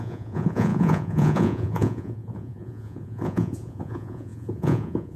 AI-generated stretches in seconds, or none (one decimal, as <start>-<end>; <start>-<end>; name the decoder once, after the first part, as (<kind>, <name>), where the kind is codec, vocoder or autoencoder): 0.0-5.2 (vocoder, Vocos)